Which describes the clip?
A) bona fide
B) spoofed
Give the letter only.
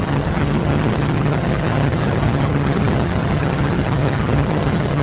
B